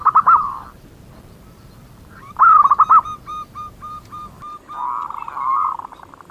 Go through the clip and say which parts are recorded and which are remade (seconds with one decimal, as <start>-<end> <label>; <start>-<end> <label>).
0.0-2.4 remade; 2.4-6.3 recorded